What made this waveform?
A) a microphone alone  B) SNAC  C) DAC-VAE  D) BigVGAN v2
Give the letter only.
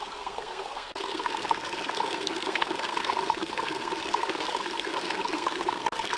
B